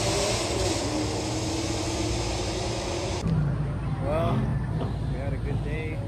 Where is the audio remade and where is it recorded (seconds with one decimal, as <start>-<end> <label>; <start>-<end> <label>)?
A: 0.0-6.1 recorded